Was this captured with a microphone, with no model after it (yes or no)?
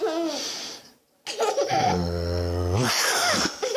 yes